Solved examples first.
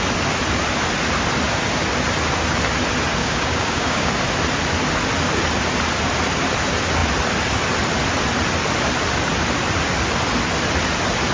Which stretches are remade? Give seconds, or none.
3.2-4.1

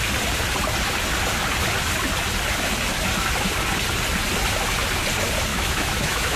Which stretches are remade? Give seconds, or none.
5.5-6.4